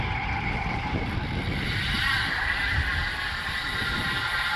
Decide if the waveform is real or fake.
real